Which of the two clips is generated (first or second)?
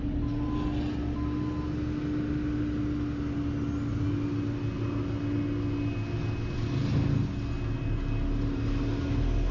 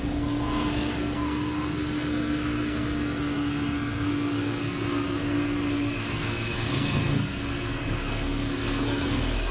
second